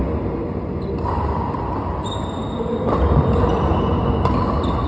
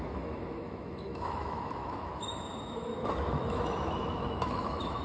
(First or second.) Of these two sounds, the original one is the first